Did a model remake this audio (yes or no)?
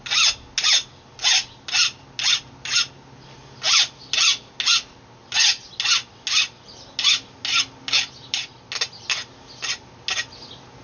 no